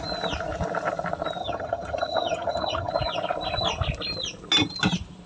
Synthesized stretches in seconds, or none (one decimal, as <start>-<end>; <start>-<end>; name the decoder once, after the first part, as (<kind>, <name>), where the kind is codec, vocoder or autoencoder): 1.4-2.9 (vocoder, HiFi-GAN)